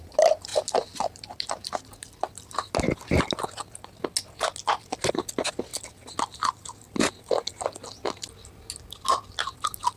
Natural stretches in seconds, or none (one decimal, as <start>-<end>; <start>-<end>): 0.0-10.0